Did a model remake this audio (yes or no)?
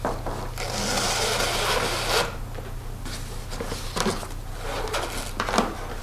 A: no